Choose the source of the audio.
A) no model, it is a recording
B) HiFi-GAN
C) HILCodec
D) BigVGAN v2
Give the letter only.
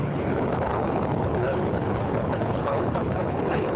C